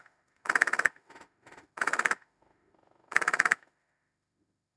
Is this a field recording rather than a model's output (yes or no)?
no